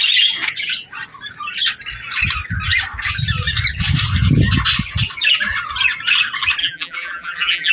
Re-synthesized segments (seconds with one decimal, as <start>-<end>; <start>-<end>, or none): 6.6-7.7